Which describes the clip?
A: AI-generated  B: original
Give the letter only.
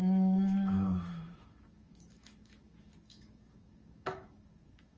A